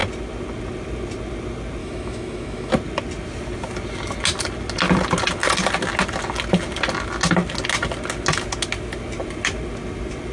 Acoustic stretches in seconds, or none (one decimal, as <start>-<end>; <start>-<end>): 0.0-1.8; 2.7-10.3